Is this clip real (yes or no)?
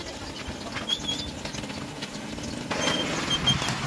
yes